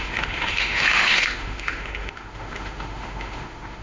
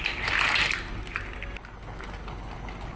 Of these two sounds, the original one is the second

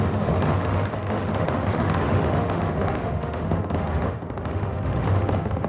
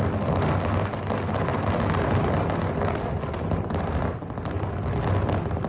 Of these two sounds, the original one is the second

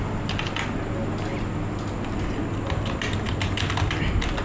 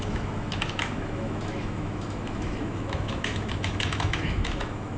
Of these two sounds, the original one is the first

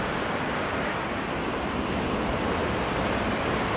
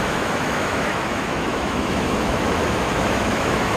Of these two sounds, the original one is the first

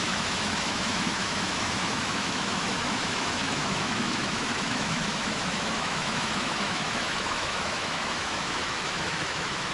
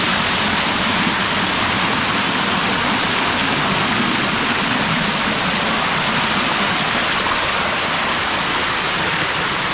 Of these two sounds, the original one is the second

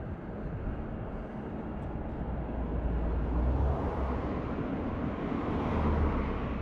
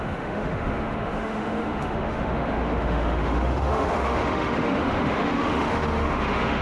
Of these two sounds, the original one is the first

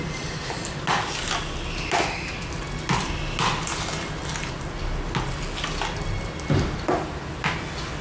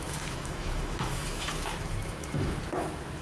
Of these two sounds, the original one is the first